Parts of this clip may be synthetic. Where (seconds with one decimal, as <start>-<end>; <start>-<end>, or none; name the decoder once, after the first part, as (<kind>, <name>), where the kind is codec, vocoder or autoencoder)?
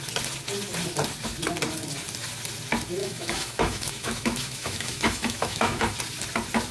3.0-5.9 (autoencoder, DAC-VAE)